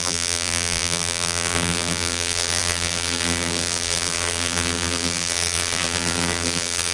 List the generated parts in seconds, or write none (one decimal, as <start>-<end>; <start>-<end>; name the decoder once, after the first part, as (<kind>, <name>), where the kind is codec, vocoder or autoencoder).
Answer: 0.0-6.9 (vocoder, BigVGAN v2)